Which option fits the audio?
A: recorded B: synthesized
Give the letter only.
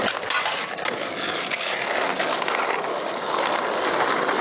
A